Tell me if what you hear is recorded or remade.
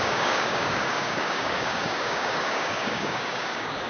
remade